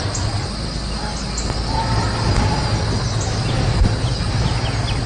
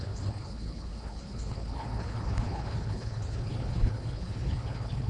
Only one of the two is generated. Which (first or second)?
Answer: second